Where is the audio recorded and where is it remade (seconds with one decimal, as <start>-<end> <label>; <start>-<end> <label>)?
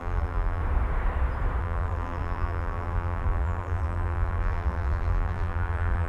0.0-0.6 remade; 0.6-1.6 recorded; 1.6-6.1 remade